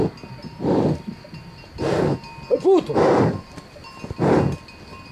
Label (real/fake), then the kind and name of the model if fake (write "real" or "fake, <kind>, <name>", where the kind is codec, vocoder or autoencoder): real